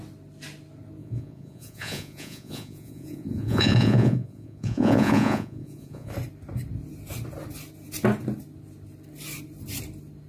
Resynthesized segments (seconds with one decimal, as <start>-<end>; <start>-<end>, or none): 1.0-6.1